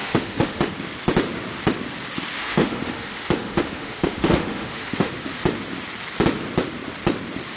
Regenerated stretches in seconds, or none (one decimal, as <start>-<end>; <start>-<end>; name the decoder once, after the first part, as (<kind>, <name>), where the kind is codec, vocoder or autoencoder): 0.0-0.7 (autoencoder, DAC-VAE); 2.4-5.1